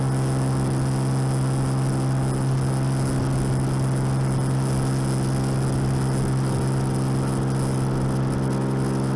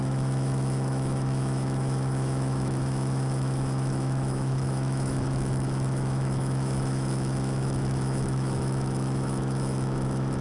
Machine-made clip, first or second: second